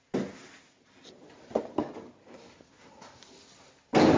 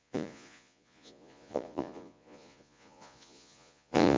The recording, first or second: first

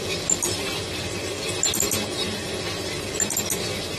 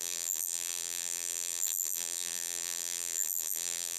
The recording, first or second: first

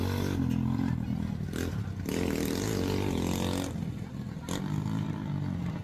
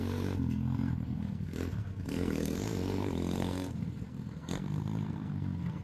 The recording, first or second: first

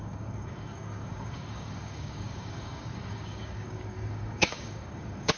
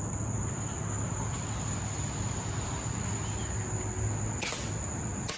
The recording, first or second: second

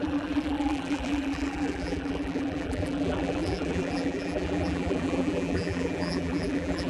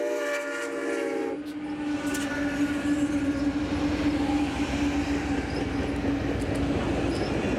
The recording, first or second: second